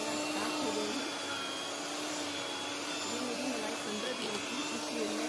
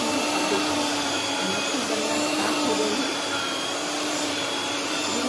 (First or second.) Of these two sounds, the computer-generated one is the second